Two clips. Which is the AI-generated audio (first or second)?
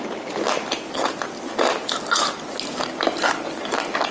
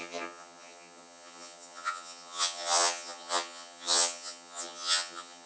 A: second